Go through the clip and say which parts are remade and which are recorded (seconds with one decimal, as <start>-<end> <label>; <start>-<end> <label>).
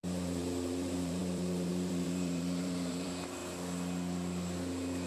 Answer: 0.0-3.4 remade; 3.4-5.1 recorded